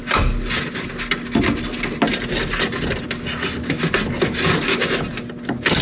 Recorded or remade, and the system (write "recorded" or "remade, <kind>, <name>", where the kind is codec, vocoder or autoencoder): recorded